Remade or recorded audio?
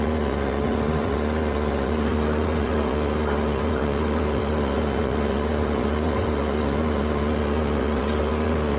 remade